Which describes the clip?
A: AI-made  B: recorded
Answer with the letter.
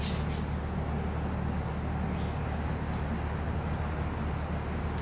B